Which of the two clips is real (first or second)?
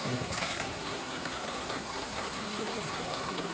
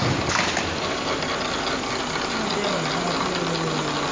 second